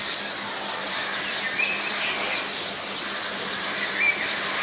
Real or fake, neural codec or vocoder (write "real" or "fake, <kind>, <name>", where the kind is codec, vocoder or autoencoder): real